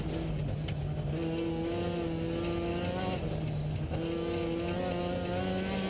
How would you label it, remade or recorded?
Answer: recorded